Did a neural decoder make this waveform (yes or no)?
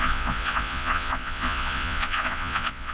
yes